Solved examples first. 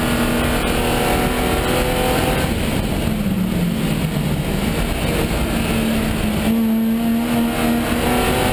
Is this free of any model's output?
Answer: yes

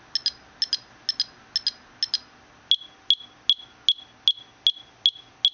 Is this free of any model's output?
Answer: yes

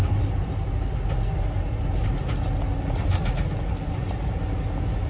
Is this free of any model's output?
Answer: yes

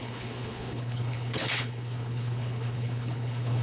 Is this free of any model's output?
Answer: no